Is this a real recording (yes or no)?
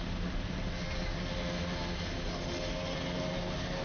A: yes